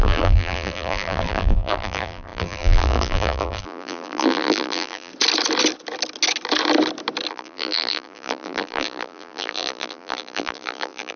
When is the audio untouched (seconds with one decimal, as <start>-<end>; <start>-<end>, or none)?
5.1-7.3